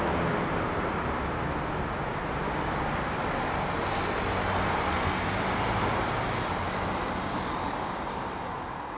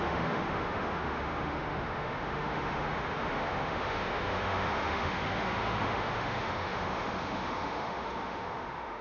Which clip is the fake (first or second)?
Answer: second